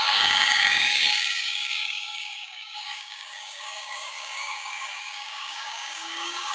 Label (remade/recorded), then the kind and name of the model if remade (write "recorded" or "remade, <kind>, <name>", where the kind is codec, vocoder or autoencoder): remade, codec, DAC